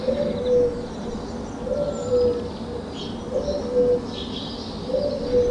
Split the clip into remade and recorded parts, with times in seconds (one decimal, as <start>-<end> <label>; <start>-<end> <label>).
0.0-5.5 recorded